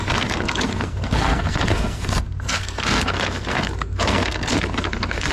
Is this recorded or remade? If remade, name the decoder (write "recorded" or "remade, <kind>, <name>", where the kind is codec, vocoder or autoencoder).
remade, codec, SNAC